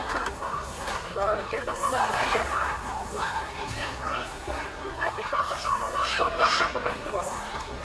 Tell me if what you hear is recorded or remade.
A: remade